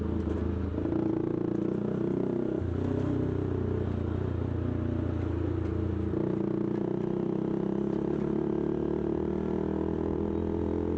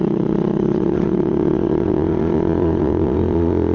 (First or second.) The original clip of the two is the first